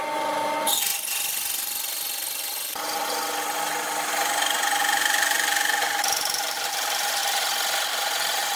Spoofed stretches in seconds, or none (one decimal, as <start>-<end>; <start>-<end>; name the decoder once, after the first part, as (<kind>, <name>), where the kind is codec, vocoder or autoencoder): 0.0-0.9 (vocoder, BigVGAN v2); 4.8-7.2; 7.9-8.6